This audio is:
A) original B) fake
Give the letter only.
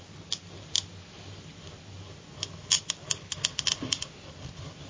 A